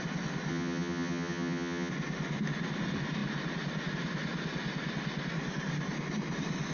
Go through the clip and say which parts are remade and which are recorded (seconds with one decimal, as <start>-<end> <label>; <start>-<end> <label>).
0.0-0.5 recorded; 0.5-1.9 remade; 1.9-6.7 recorded